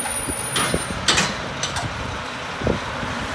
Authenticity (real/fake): real